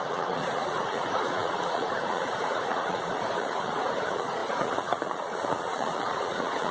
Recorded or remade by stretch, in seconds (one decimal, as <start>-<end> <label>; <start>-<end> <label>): 0.0-6.7 remade